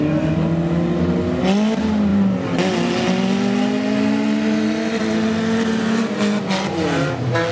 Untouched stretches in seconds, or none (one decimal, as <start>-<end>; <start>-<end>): 0.0-7.5